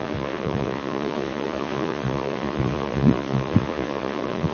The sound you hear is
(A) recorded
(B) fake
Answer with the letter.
B